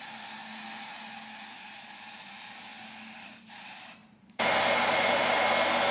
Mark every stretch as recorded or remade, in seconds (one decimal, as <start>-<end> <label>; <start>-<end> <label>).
0.0-4.0 recorded; 4.0-5.4 remade; 5.4-5.9 recorded